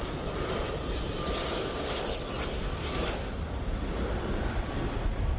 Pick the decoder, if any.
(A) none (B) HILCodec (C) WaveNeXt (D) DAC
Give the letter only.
A